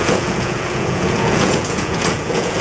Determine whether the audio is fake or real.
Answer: fake